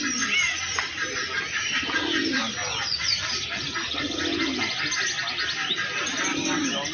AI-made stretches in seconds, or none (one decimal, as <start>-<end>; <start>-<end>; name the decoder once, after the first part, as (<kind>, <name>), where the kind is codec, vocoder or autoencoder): none